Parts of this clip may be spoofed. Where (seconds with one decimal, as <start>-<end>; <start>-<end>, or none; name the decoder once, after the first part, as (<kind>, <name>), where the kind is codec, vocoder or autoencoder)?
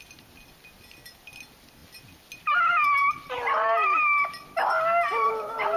none